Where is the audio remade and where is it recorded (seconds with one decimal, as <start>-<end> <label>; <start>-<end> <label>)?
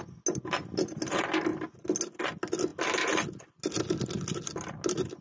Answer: 0.0-5.2 recorded